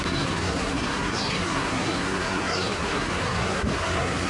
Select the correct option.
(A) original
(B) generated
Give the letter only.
B